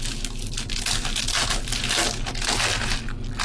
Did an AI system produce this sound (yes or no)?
no